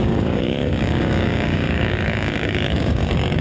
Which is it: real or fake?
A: fake